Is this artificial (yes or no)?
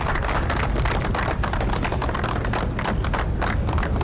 no